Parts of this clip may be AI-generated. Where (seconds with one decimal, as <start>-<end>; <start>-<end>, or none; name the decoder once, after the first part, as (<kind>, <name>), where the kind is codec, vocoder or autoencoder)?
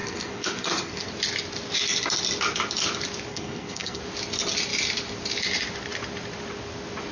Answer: 0.0-1.1 (codec, SNAC); 3.3-4.0